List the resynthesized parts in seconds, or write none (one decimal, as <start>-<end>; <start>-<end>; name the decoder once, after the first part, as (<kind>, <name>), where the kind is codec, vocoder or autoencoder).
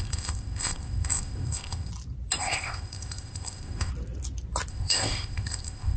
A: 0.0-1.9 (codec, ZipCodec); 2.4-3.9; 4.7-6.0